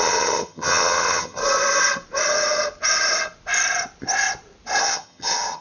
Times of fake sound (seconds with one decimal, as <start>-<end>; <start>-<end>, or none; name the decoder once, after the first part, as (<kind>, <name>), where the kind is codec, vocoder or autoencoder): 0.0-1.4 (vocoder, HiFi-GAN); 4.8-5.6